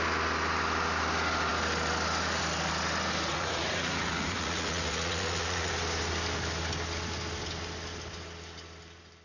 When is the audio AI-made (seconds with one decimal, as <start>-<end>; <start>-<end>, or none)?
3.3-5.7